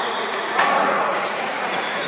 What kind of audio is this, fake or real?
fake